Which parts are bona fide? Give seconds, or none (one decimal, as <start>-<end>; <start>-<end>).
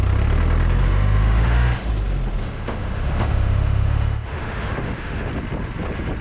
0.0-0.8; 1.9-2.4; 5.3-6.2